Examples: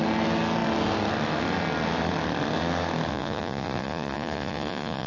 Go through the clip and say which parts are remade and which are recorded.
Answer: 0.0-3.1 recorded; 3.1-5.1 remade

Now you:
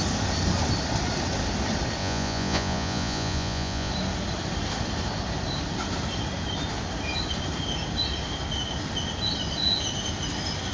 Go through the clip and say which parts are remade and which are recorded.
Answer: 0.0-2.0 recorded; 2.0-3.9 remade; 3.9-10.7 recorded

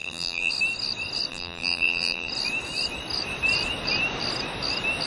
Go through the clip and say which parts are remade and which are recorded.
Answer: 0.0-0.5 remade; 0.5-1.3 recorded; 1.3-2.3 remade; 2.3-5.1 recorded

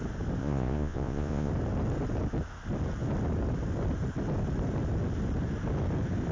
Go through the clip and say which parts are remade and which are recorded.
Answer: 0.0-0.4 recorded; 0.4-1.5 remade; 1.5-6.3 recorded

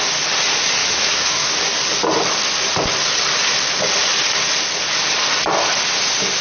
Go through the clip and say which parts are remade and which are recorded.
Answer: 0.0-0.8 recorded; 0.8-1.5 remade; 1.5-6.4 recorded

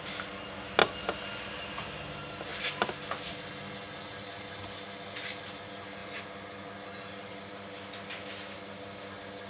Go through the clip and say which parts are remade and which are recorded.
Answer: 0.0-9.5 recorded